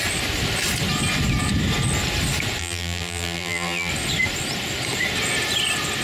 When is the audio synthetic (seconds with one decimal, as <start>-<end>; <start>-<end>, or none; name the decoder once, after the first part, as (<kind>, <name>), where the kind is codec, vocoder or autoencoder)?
2.6-3.9 (vocoder, BigVGAN v2)